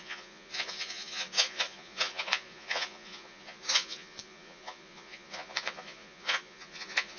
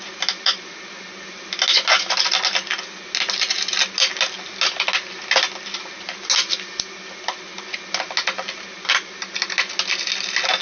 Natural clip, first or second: second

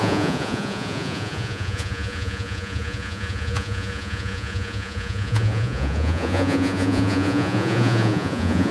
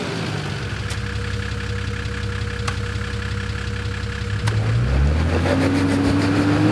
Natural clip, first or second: second